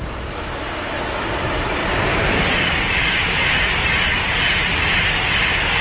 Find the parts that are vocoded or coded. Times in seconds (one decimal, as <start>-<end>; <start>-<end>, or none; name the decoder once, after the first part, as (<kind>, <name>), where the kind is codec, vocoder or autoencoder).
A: none